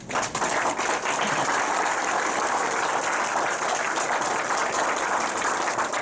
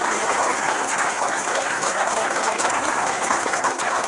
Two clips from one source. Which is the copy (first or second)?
second